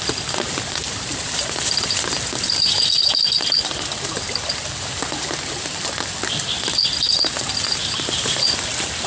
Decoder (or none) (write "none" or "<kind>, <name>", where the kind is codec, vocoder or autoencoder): vocoder, BigVGAN v2